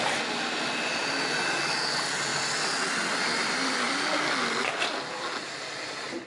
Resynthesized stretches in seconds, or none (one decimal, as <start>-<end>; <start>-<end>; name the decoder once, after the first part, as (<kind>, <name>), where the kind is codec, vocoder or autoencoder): none